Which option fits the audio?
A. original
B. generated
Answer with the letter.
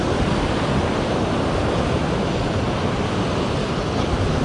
A